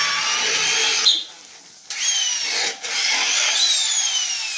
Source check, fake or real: real